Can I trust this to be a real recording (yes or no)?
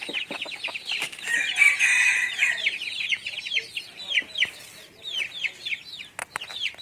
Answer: yes